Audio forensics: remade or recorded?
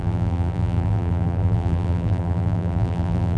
remade